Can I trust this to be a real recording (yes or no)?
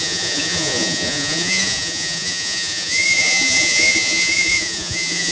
no